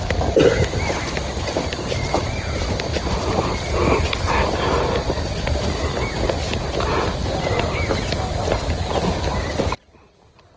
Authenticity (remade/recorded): recorded